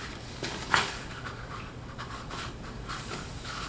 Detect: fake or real fake